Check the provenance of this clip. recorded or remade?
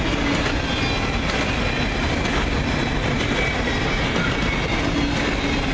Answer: recorded